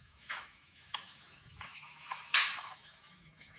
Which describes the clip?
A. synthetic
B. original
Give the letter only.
A